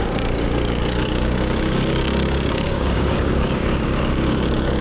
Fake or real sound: fake